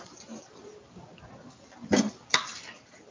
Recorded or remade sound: recorded